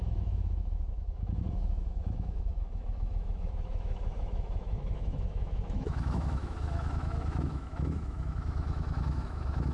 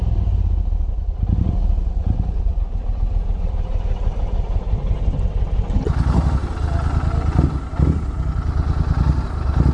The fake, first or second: first